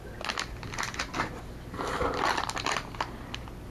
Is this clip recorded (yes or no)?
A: yes